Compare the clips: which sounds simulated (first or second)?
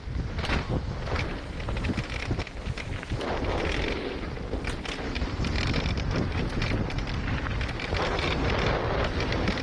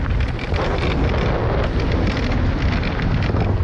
first